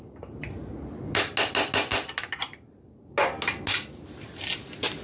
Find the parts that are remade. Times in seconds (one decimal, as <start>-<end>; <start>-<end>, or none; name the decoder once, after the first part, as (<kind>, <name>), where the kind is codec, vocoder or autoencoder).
none